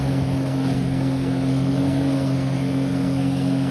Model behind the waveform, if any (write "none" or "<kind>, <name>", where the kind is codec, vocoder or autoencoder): codec, SNAC